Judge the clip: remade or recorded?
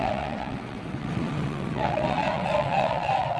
remade